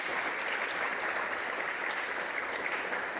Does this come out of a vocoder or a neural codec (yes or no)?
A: no